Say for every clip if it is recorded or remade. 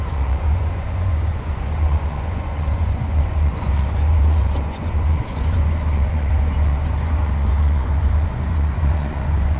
remade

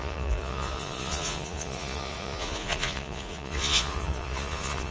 remade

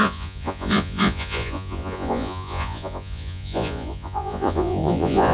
remade